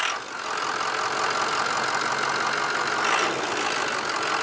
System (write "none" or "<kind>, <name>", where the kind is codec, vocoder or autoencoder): none